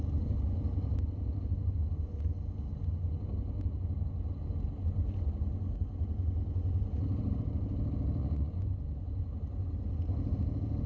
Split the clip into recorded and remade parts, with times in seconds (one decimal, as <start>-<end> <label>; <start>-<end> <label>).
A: 0.0-8.2 recorded; 8.2-8.7 remade; 8.7-10.9 recorded